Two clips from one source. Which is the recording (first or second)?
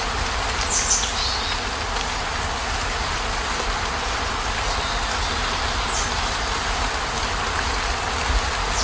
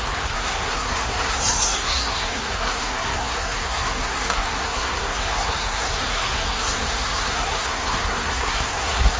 first